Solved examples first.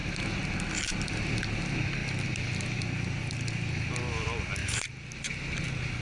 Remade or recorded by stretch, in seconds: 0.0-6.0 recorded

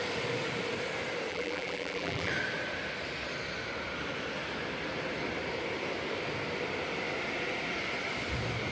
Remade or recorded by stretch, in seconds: 0.0-1.3 recorded; 1.3-2.3 remade; 2.3-8.7 recorded

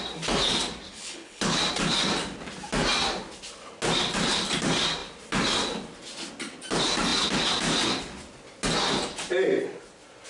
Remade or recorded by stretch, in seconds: 0.0-0.9 recorded; 0.9-1.6 remade; 1.6-10.3 recorded

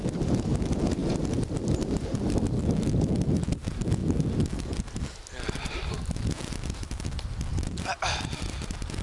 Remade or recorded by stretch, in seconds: 0.0-1.0 recorded; 1.0-2.6 remade; 2.6-7.5 recorded; 7.5-8.4 remade; 8.4-9.0 recorded